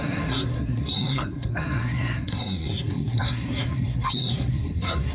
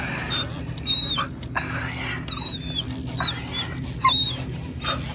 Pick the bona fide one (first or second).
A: second